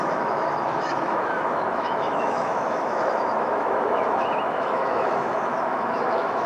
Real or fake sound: fake